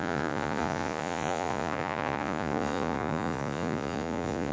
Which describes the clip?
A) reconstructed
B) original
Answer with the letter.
A